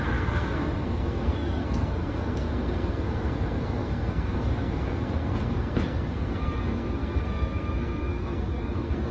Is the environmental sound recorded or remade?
remade